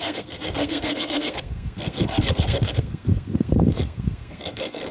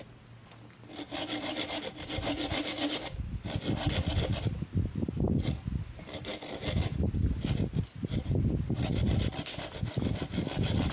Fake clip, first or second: first